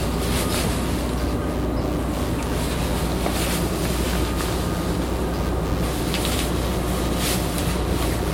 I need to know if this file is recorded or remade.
recorded